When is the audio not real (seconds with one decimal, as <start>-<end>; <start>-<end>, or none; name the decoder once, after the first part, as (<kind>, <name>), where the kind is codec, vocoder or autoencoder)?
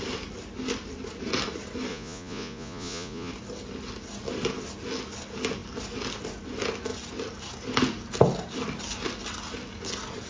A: 1.9-3.3 (vocoder, Vocos)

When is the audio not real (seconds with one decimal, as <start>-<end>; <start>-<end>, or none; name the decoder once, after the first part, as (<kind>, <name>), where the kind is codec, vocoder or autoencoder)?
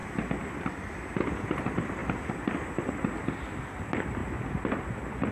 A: 0.6-2.0 (vocoder, BigVGAN v2); 3.6-4.2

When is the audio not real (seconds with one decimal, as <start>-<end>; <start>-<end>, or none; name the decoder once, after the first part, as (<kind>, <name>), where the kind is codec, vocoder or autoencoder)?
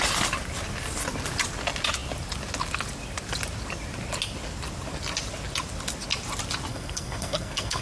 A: 6.7-7.8 (codec, SNAC)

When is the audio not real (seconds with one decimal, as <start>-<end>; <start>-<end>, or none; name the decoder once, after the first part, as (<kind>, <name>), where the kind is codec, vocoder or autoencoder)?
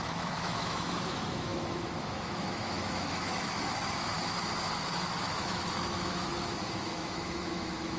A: 0.0-4.1 (autoencoder, DAC-VAE); 5.2-8.0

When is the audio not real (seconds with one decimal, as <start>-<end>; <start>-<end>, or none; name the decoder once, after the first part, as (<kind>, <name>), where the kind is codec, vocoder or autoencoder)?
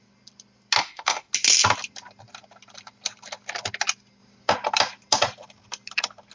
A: 0.8-1.3 (autoencoder, DAC-VAE)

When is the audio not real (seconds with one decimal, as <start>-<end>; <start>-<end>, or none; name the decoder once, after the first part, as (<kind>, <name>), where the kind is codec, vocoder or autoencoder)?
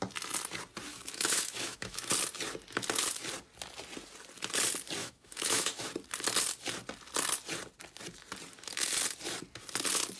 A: 0.9-2.1 (autoencoder, DAC-VAE); 5.0-5.8